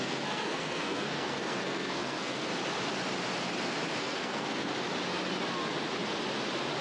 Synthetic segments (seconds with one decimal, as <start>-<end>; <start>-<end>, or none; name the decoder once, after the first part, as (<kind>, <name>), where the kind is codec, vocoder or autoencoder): 0.0-2.5 (codec, SNAC); 4.0-4.7